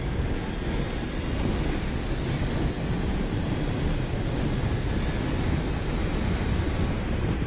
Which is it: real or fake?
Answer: real